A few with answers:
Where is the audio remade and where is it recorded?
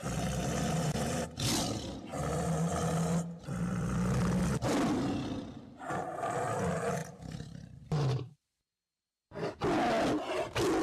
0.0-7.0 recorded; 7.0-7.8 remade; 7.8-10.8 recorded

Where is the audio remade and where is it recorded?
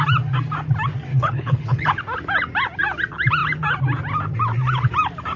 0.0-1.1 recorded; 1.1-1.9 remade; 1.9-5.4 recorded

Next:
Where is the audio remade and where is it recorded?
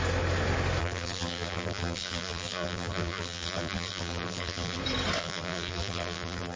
0.0-0.8 recorded; 0.8-4.8 remade; 4.8-5.2 recorded; 5.2-6.6 remade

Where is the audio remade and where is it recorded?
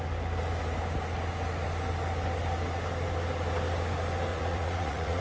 0.0-4.3 recorded; 4.3-5.2 remade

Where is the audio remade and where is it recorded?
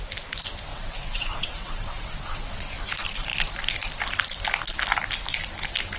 0.0-0.7 recorded; 0.7-2.7 remade; 2.7-6.0 recorded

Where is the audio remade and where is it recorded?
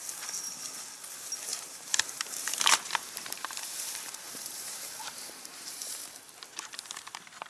0.0-1.5 recorded; 1.5-6.0 remade; 6.0-7.5 recorded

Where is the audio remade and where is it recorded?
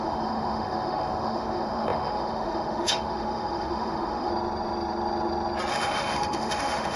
0.0-4.3 remade; 4.3-5.7 recorded; 5.7-7.0 remade